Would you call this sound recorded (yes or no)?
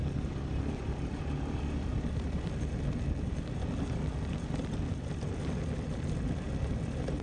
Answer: yes